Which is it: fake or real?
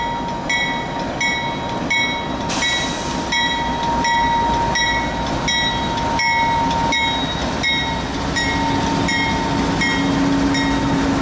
real